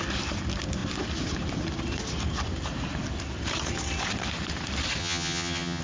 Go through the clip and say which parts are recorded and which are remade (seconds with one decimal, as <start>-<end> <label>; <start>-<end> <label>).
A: 0.0-5.0 recorded; 5.0-5.8 remade